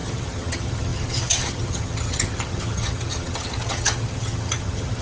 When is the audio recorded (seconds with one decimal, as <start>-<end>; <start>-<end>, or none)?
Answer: none